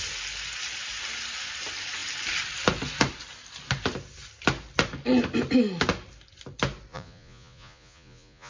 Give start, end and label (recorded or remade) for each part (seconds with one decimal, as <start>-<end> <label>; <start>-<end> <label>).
0.0-6.9 recorded; 6.9-8.5 remade